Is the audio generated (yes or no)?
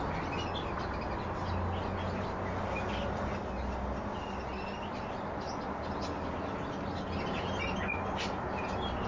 no